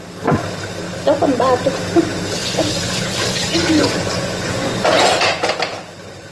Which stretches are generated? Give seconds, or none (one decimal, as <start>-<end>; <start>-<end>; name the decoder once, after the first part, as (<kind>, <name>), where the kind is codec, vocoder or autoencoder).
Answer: 2.4-5.1 (vocoder, Vocos)

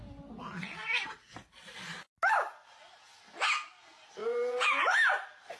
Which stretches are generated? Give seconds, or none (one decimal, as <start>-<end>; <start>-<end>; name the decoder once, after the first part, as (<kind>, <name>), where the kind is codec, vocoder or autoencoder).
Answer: 4.2-4.8 (vocoder, Vocos)